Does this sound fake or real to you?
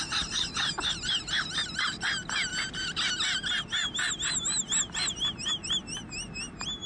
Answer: real